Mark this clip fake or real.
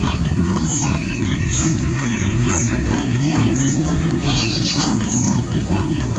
fake